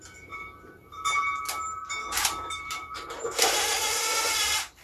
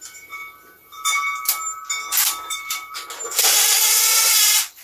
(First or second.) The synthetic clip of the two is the first